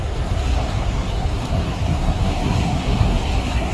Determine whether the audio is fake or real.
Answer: fake